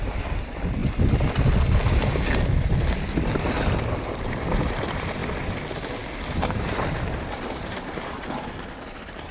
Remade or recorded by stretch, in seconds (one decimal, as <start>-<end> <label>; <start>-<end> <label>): 0.0-0.8 remade; 0.8-3.9 recorded; 3.9-5.2 remade; 5.2-6.2 recorded; 6.2-9.3 remade